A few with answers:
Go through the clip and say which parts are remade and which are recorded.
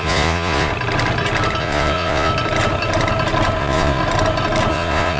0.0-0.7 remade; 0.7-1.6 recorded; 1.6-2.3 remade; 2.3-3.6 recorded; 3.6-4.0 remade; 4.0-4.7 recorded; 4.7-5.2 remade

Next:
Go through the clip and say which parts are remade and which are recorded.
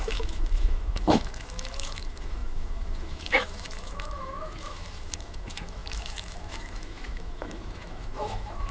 0.0-8.7 remade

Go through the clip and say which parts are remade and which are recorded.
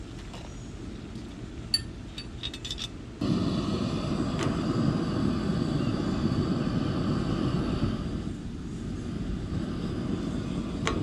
0.0-11.0 recorded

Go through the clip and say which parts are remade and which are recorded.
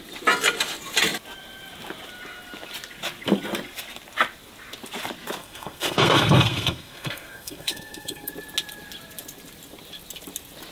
0.0-5.4 recorded; 5.4-8.3 remade; 8.3-10.7 recorded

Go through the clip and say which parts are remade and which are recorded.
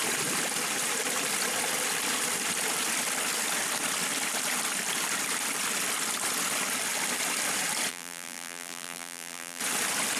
0.0-7.9 recorded; 7.9-9.6 remade; 9.6-10.2 recorded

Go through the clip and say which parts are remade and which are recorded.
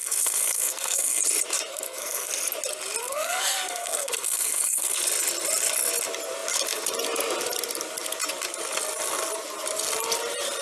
0.0-1.2 remade; 1.2-1.7 recorded; 1.7-2.3 remade; 2.3-3.0 recorded; 3.0-5.0 remade; 5.0-10.6 recorded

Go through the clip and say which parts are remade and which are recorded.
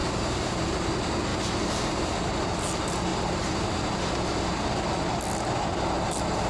0.0-0.6 remade; 0.6-1.3 recorded; 1.3-2.3 remade; 2.3-3.1 recorded; 3.1-4.0 remade; 4.0-6.5 recorded